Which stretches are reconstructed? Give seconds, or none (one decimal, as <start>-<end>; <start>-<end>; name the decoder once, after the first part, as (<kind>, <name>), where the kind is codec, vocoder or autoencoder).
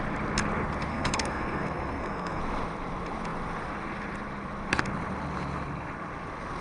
0.9-2.4 (codec, SNAC)